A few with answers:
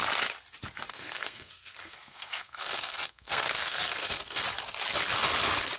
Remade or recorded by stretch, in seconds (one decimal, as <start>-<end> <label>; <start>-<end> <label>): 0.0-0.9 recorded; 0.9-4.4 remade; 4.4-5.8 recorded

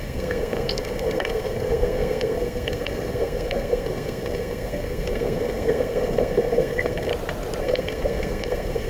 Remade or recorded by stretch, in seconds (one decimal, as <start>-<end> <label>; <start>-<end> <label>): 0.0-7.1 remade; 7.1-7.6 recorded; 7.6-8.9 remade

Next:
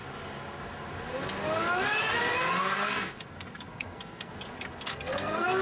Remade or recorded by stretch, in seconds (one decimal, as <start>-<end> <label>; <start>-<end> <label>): 0.0-2.6 recorded; 2.6-4.3 remade; 4.3-4.9 recorded; 4.9-5.6 remade

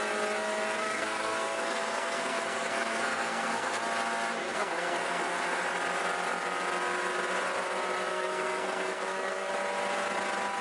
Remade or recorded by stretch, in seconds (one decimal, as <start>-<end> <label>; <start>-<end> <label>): 0.0-0.8 recorded; 0.8-3.8 remade; 3.8-4.4 recorded; 4.4-5.6 remade; 5.6-8.1 recorded; 8.1-9.5 remade; 9.5-10.6 recorded

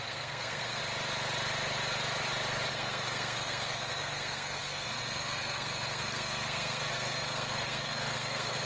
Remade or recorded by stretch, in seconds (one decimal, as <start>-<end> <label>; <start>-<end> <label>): 0.0-0.8 remade; 0.8-2.7 recorded; 2.7-8.7 remade